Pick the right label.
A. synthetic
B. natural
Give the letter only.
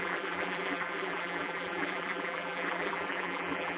A